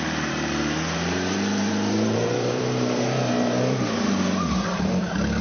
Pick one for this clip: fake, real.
fake